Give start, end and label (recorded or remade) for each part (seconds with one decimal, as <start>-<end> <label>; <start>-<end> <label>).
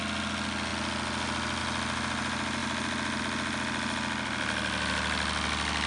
0.0-5.9 recorded